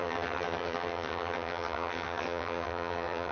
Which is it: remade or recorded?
remade